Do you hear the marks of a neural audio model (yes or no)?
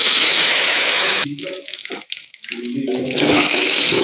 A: yes